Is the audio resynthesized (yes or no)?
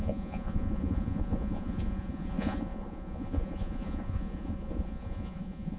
yes